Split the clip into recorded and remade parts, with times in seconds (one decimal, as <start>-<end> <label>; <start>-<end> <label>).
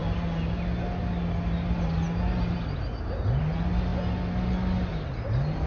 0.0-5.7 recorded